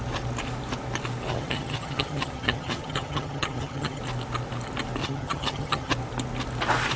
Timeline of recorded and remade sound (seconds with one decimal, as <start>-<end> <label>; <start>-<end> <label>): 0.0-1.3 recorded; 1.3-4.0 remade; 4.0-5.0 recorded; 5.0-5.9 remade; 5.9-7.0 recorded